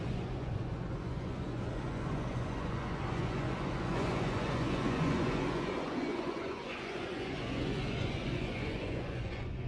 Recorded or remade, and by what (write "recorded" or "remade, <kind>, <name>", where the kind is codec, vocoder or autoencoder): remade, vocoder, Vocos